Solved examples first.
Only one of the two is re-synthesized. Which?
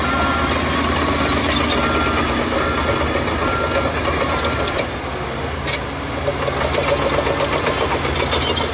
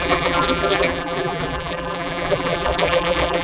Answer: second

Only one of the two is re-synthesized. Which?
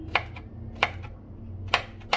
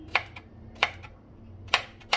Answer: second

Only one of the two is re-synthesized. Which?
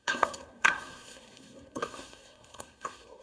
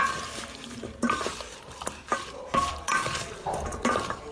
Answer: first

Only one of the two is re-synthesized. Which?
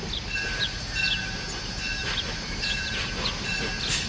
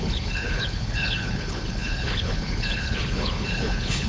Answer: second